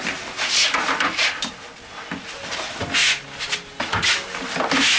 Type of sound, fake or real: real